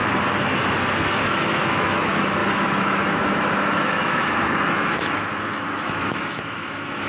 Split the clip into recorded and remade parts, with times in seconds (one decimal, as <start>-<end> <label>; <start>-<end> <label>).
0.0-1.4 recorded; 1.4-7.1 remade